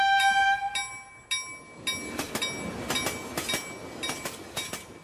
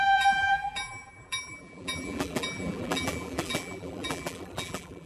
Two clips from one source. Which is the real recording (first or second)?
first